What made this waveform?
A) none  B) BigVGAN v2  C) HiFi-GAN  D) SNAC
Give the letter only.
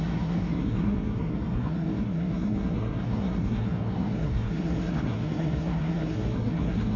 D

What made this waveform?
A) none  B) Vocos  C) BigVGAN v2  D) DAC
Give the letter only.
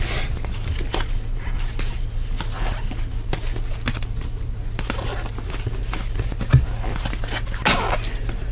A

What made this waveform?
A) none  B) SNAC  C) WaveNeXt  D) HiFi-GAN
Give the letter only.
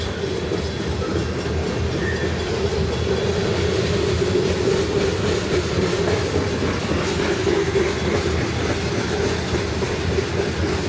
A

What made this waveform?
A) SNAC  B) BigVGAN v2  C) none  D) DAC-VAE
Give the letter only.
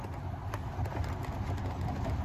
C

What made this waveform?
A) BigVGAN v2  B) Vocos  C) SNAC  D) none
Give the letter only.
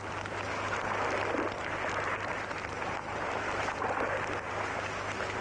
D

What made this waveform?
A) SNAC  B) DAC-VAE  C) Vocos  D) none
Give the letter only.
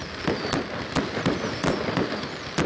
D